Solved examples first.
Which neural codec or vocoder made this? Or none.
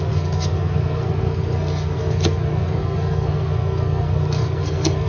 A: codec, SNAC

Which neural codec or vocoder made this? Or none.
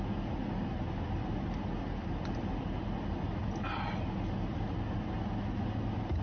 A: none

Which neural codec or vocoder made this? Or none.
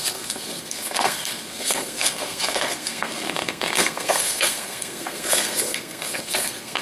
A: codec, SNAC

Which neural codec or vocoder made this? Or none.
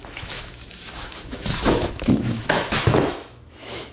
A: autoencoder, DAC-VAE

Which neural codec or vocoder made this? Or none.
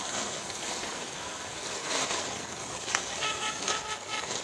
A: codec, SNAC